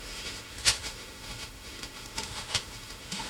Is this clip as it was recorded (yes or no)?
no